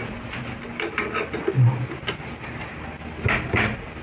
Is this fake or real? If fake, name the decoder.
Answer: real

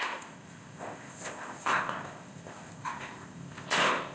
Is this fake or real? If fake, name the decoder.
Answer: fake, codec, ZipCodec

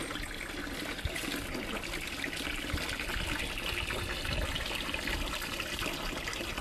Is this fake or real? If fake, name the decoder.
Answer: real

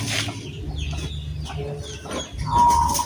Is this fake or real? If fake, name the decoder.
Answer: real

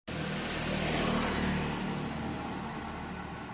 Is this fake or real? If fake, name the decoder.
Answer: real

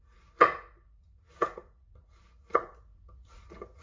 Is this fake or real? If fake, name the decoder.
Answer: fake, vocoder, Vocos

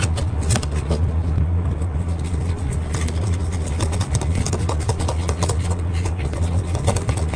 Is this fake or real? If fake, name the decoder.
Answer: fake, vocoder, Vocos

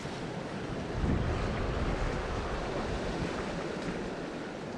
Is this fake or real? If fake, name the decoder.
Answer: real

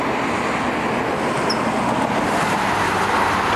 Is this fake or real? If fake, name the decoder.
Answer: real